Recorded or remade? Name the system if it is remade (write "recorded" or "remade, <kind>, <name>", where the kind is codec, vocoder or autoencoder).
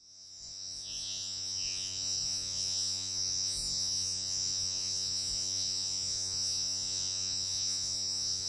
remade, vocoder, Vocos